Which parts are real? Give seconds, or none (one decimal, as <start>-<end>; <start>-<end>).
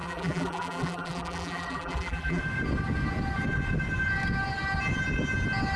2.4-5.8